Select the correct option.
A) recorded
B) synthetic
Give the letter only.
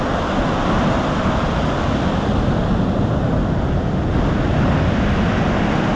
A